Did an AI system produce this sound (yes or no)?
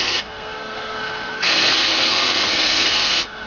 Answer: yes